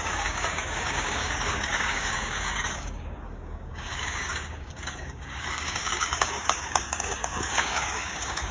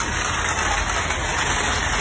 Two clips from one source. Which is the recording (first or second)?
second